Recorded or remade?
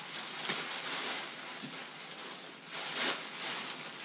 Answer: recorded